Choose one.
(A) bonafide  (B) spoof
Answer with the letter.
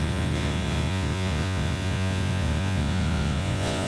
B